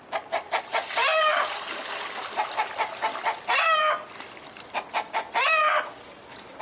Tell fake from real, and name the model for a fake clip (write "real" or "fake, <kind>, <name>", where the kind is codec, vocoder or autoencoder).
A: fake, vocoder, BigVGAN v2